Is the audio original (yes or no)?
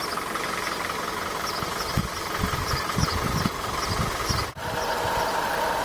yes